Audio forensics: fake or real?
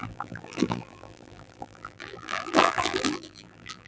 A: fake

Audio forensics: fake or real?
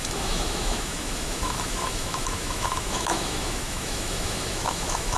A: fake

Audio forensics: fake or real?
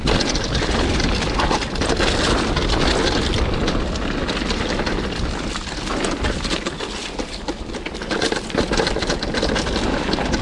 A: real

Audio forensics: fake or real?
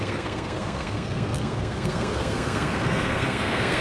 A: fake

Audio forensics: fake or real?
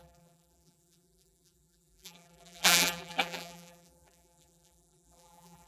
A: fake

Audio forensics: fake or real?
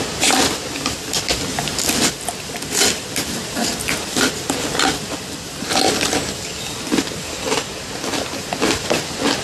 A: real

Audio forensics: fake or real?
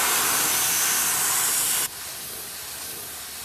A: real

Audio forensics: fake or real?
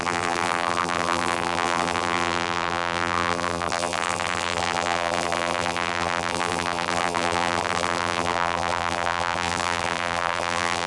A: fake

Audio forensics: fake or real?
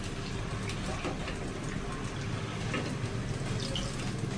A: real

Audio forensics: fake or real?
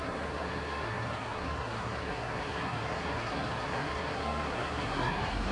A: fake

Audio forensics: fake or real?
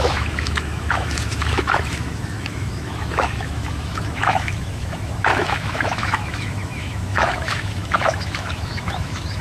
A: fake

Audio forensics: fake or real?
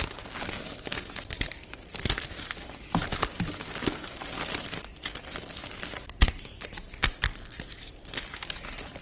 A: real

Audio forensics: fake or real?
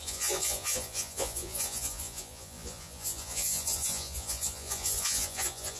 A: fake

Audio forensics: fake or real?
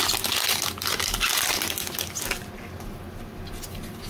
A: real